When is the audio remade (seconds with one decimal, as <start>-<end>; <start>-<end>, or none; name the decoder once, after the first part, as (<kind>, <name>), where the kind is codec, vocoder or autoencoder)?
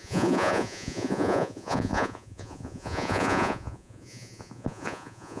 0.0-5.4 (vocoder, Vocos)